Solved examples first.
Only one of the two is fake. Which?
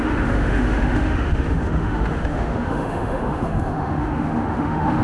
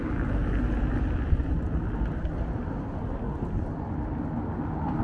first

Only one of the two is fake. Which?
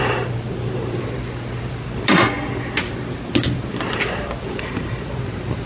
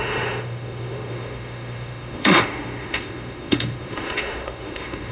second